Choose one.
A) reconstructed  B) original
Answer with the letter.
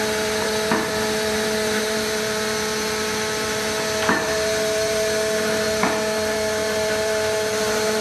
A